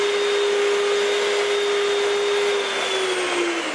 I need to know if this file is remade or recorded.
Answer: recorded